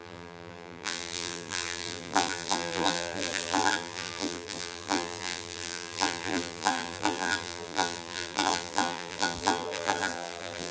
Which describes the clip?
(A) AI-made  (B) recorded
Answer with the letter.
A